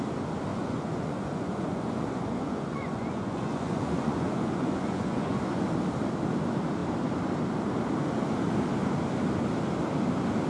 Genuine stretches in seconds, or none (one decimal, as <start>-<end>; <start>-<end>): 0.0-0.5; 5.6-10.5